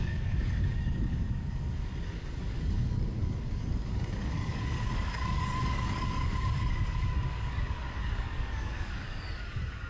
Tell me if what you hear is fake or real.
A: fake